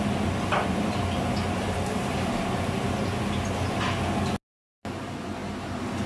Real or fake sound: real